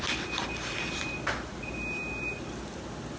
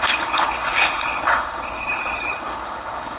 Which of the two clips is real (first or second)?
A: first